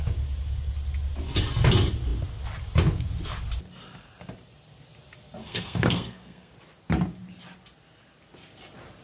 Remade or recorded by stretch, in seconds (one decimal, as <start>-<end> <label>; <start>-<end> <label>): 0.0-5.4 recorded; 5.4-6.5 remade; 6.5-9.0 recorded